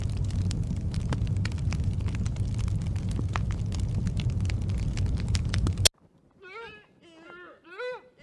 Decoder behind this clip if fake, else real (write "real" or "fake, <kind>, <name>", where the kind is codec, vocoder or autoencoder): real